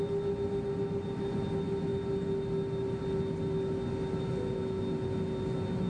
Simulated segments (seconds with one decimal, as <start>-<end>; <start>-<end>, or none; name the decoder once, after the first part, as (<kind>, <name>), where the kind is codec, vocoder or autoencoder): none

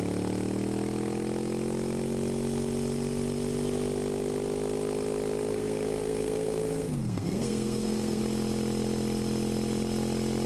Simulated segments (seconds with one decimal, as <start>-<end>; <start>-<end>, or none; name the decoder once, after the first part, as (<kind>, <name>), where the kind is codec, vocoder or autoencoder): 5.5-8.2 (codec, SNAC)

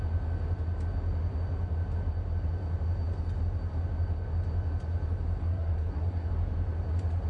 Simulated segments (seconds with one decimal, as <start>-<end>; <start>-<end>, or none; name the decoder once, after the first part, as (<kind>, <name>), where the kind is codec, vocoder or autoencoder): 5.4-6.3 (codec, SNAC)

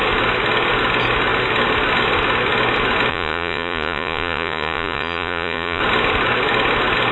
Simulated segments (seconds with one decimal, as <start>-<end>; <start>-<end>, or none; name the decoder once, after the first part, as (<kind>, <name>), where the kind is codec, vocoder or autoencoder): 3.1-5.8 (vocoder, Vocos)

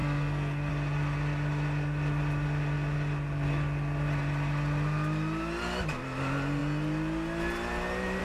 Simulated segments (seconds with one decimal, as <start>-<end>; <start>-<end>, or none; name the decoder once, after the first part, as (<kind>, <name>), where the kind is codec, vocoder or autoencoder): 0.0-0.7 (codec, SNAC)

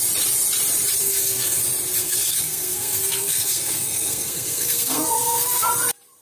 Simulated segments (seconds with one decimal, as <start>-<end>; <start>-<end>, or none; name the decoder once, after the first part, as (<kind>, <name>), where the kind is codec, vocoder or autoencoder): 1.0-1.6 (codec, SNAC); 2.0-5.7